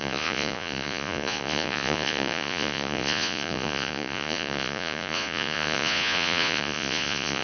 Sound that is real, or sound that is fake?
fake